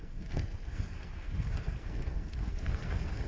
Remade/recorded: remade